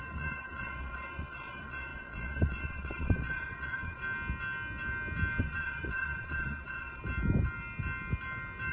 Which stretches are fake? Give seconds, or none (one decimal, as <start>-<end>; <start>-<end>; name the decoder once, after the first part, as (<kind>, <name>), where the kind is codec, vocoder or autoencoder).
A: 0.0-4.0 (vocoder, Vocos); 5.4-7.0